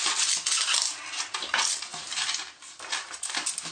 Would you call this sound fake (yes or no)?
no